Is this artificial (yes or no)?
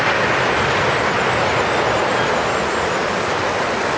no